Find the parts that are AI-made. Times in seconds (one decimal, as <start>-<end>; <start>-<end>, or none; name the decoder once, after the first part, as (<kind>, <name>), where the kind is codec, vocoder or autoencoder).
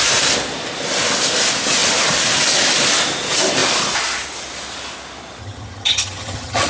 5.4-6.7 (vocoder, HiFi-GAN)